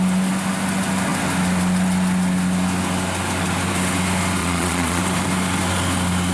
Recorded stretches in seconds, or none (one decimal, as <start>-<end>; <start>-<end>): 0.0-4.4; 5.0-6.3